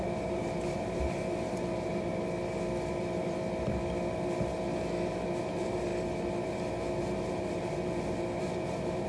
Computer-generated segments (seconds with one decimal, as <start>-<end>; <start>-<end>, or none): 0.0-2.1; 2.9-3.4; 5.4-5.9; 6.5-9.1